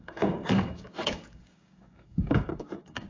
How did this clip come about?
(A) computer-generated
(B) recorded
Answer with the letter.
A